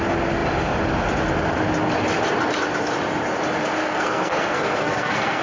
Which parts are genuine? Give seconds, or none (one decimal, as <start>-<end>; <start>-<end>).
0.0-3.8